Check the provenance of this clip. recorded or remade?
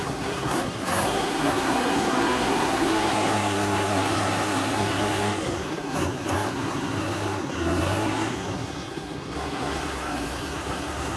remade